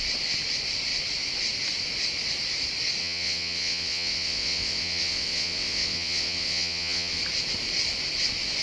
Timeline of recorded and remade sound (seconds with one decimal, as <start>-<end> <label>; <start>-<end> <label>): 0.0-3.0 recorded; 3.0-7.2 remade; 7.2-8.6 recorded